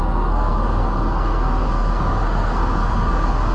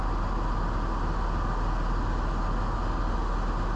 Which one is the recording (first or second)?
second